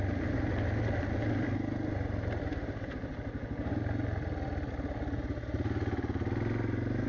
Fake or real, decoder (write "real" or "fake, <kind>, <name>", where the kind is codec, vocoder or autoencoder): real